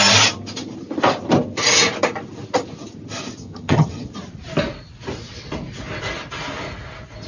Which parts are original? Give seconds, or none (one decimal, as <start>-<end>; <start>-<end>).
0.0-3.4; 4.1-7.3